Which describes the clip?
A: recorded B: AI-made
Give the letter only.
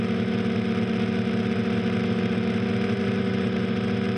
A